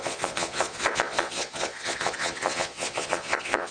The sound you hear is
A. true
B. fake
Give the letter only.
B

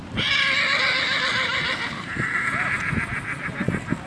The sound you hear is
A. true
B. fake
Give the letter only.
A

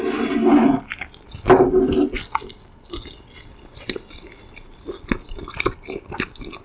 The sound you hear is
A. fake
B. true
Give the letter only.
B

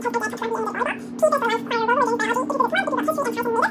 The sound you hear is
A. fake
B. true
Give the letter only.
B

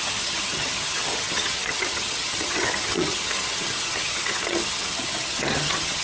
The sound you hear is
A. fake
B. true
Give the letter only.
A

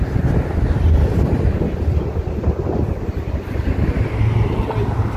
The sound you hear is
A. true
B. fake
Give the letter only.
A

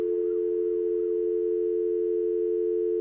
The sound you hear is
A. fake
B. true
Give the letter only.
B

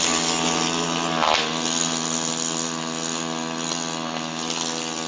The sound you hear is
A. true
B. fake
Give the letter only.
A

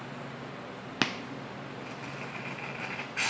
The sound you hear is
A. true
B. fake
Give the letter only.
A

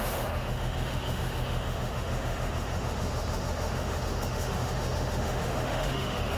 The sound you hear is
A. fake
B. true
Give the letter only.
A